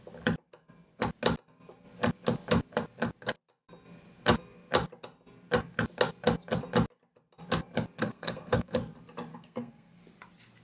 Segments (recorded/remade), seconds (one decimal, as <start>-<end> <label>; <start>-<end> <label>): 0.0-8.0 recorded; 8.0-8.8 remade; 8.8-9.3 recorded; 9.3-10.0 remade; 10.0-10.6 recorded